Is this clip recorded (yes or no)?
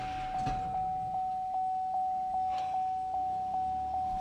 yes